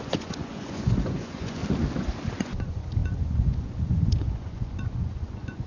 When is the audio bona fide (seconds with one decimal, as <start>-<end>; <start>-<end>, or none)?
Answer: 1.6-2.4